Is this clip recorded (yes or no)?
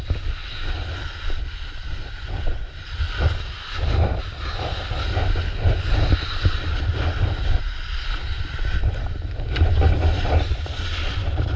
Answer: yes